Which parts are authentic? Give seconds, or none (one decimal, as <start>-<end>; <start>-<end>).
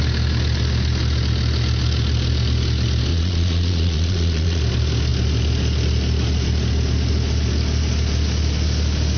0.0-3.1; 4.6-9.2